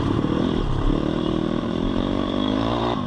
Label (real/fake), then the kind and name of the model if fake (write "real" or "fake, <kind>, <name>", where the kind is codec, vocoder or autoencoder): fake, vocoder, BigVGAN v2